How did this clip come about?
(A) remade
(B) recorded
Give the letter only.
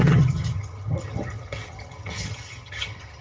A